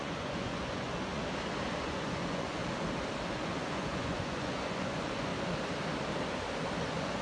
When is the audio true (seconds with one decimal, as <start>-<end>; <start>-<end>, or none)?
1.2-1.7; 2.6-3.3; 5.3-6.8